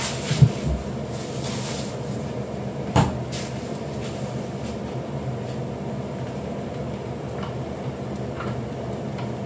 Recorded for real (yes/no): yes